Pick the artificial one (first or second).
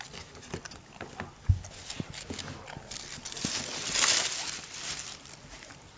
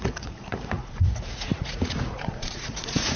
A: second